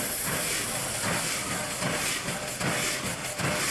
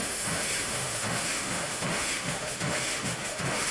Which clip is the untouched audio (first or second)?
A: first